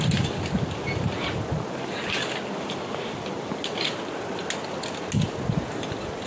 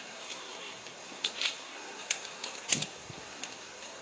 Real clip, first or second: first